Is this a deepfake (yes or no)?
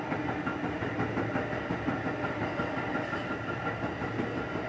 no